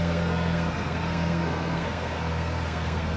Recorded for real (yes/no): no